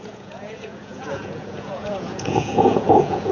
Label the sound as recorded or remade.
remade